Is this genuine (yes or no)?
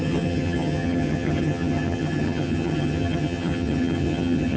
no